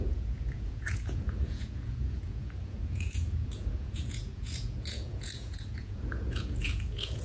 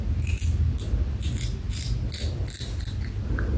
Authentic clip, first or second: second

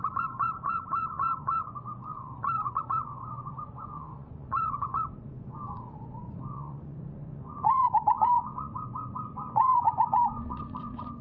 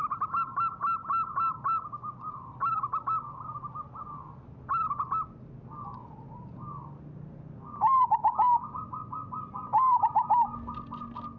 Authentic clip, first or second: second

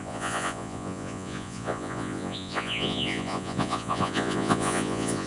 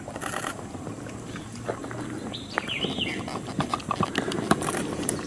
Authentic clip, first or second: second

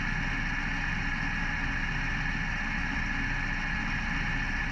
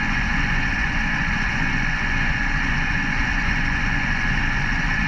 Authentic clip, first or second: first